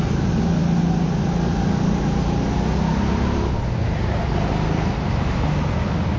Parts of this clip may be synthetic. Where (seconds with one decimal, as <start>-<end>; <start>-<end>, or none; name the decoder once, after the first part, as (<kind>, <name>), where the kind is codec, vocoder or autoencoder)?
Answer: none